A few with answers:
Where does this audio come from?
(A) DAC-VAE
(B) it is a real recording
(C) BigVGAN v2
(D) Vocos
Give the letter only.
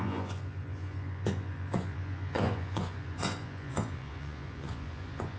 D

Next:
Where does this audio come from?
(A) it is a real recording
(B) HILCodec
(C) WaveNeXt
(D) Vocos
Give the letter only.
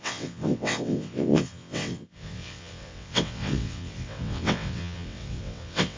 C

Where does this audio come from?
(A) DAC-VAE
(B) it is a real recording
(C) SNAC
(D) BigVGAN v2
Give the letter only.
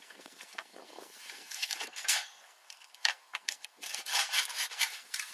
C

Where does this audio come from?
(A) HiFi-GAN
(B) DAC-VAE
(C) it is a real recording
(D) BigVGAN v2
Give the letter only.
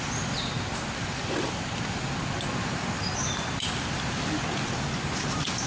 C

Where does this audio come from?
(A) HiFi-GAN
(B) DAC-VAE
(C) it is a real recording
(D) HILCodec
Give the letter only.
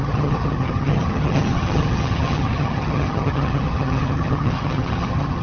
A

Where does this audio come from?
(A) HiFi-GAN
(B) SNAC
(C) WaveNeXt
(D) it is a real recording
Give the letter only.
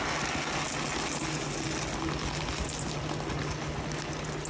D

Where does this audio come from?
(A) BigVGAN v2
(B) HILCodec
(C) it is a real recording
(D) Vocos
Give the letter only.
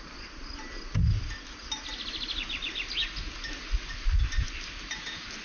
C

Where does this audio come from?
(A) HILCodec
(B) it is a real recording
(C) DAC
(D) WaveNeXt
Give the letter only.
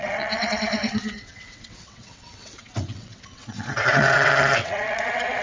D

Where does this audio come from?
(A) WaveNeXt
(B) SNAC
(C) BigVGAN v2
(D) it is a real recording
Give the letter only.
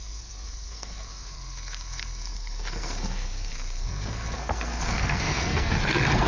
B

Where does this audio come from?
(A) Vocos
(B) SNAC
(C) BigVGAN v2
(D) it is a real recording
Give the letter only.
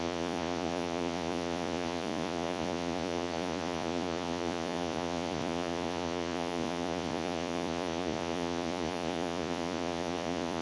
A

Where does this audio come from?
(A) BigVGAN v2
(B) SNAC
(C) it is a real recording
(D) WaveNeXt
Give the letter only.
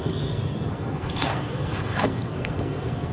B